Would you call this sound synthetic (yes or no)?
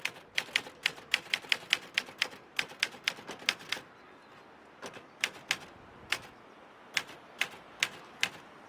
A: no